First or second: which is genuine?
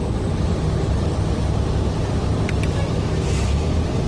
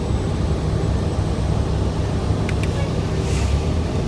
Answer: second